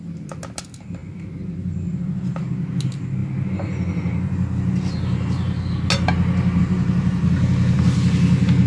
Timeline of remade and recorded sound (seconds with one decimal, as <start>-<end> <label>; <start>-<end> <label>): 0.0-8.7 recorded